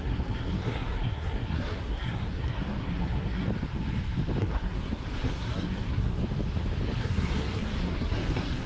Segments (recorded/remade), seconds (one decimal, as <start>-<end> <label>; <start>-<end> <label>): 0.0-3.5 remade; 3.5-4.4 recorded; 4.4-6.2 remade; 6.2-7.0 recorded; 7.0-8.7 remade